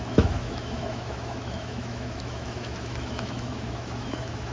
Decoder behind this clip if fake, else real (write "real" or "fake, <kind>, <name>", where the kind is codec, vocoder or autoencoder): fake, autoencoder, DAC-VAE